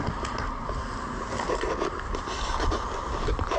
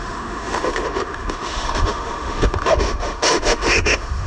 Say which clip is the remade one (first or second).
second